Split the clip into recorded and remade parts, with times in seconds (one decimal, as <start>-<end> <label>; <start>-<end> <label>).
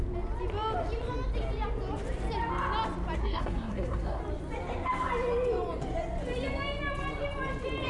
0.0-3.2 recorded; 3.2-4.2 remade; 4.2-7.9 recorded